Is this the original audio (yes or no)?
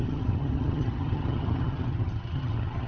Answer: no